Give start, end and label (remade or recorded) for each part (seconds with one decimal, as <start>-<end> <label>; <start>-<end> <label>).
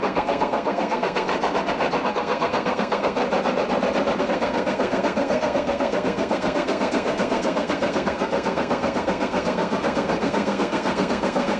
0.0-1.3 remade; 1.3-2.1 recorded; 2.1-3.2 remade; 3.2-4.2 recorded; 4.2-11.6 remade